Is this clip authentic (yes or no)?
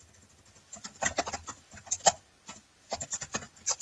yes